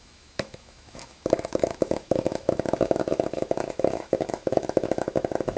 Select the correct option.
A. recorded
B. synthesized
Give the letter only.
B